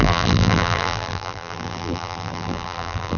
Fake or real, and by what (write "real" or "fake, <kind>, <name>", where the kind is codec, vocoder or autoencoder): fake, vocoder, BigVGAN v2